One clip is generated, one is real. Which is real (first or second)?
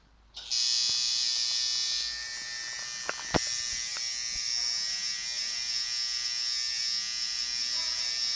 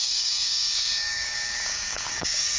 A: first